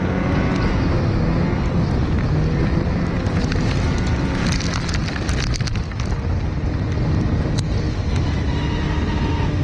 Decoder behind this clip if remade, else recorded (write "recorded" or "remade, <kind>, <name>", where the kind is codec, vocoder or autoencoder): recorded